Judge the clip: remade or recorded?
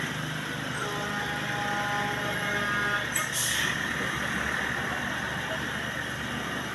recorded